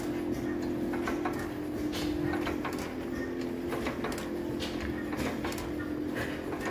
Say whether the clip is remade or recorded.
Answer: recorded